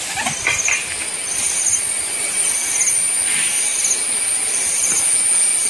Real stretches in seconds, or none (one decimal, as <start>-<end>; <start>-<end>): 0.0-5.7